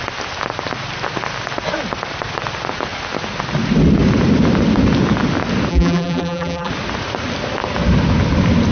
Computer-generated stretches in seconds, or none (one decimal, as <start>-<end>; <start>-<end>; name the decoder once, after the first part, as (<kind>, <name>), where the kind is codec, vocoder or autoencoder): 5.7-6.7 (vocoder, BigVGAN v2)